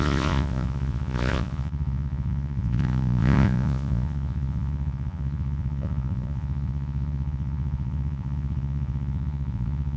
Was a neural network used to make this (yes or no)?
yes